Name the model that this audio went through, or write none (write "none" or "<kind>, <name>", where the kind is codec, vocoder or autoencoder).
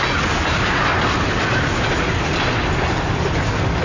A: none